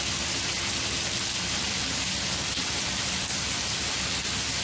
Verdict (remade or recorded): recorded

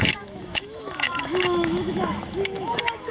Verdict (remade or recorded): remade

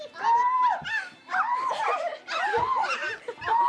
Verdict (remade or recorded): recorded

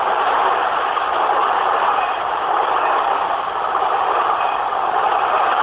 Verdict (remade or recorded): recorded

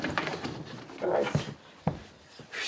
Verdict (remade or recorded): recorded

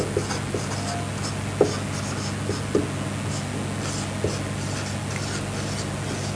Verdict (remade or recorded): recorded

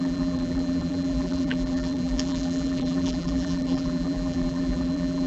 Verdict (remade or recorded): remade